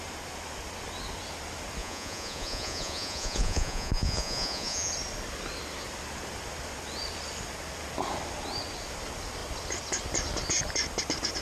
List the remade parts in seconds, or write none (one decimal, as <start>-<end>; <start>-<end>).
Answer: 1.8-4.9